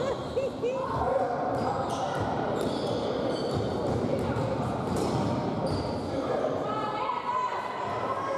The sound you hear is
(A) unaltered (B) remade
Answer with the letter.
B